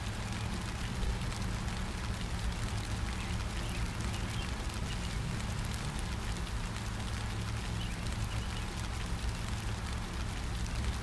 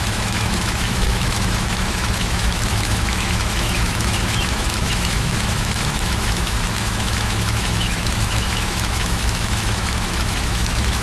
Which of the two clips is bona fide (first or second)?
first